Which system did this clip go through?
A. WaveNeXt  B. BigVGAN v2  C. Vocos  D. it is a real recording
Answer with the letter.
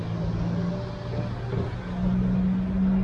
D